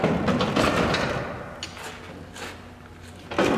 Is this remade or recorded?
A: recorded